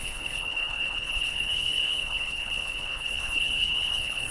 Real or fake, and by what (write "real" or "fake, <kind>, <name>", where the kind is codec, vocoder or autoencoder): fake, codec, HILCodec